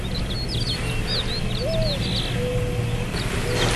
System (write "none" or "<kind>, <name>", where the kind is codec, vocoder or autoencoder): none